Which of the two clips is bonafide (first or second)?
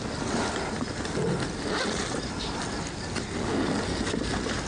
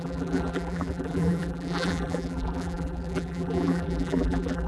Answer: first